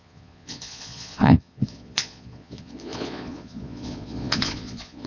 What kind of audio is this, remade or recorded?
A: remade